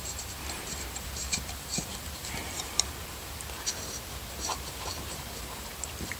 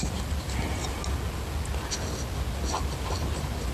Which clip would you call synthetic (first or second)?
first